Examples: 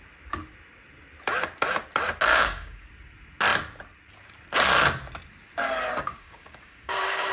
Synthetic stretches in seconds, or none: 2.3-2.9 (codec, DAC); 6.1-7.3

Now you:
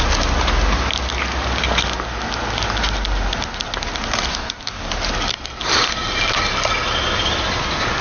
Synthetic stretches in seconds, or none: 4.3-4.9 (codec, DAC)

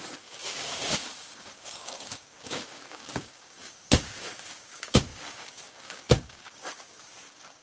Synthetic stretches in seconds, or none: 0.0-7.6 (codec, DAC)

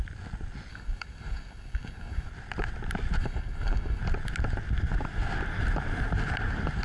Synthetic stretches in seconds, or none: 0.7-2.3 (codec, DAC); 3.2-4.0

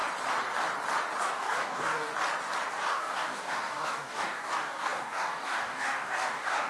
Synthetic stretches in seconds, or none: 1.2-2.1 (codec, DAC); 2.7-6.7